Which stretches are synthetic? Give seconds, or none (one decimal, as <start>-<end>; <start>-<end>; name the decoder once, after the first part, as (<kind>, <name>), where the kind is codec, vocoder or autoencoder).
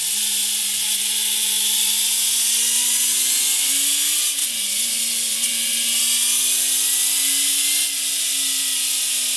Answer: 0.4-3.7 (vocoder, Vocos); 4.4-6.0